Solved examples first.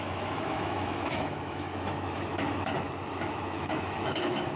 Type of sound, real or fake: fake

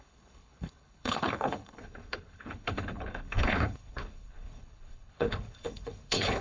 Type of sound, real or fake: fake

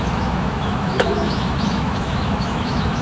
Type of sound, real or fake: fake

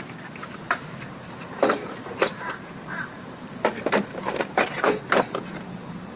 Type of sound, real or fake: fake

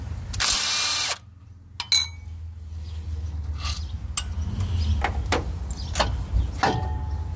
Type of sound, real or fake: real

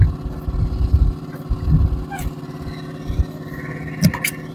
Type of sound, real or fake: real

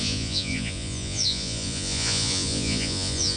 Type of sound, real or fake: fake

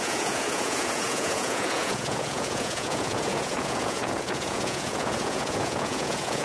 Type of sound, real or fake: fake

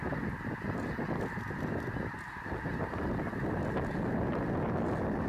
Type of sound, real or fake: real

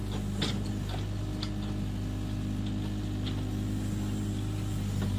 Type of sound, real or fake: real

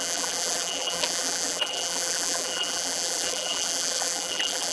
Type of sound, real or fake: fake